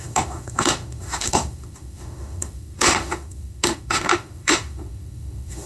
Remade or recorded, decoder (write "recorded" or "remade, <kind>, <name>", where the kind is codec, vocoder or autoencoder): remade, autoencoder, DAC-VAE